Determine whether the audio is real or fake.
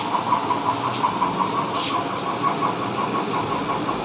real